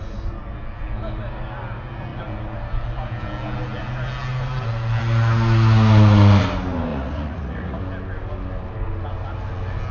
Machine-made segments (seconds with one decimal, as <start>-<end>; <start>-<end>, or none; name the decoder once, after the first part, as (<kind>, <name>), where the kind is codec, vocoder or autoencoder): 6.9-7.8 (vocoder, Vocos)